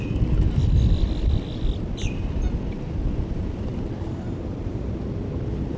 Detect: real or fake real